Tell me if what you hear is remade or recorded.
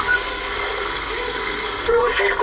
remade